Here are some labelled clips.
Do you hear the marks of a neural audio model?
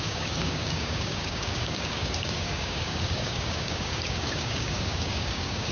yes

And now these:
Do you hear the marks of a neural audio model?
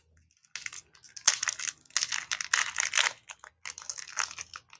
no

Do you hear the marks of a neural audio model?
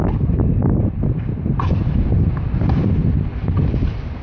no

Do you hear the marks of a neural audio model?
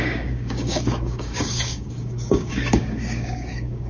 yes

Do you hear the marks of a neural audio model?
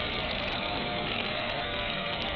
yes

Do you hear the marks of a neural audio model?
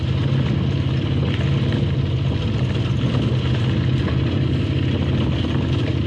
no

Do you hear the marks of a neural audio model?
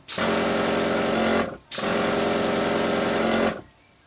no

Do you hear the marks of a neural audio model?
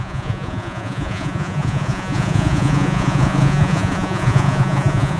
yes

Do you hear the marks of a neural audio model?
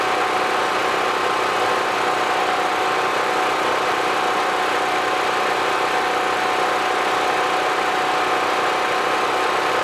no